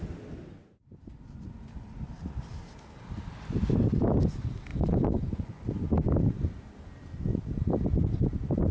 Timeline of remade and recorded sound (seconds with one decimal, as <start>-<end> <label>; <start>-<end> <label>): 0.0-4.7 recorded; 4.7-5.8 remade; 5.8-8.7 recorded